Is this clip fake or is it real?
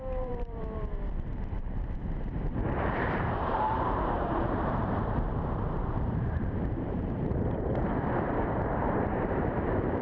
fake